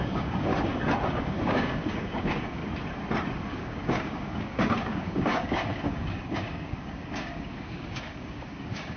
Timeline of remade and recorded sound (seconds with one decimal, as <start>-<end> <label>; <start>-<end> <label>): 0.0-0.5 remade; 0.5-1.2 recorded; 1.2-2.6 remade; 2.6-3.4 recorded; 3.4-9.0 remade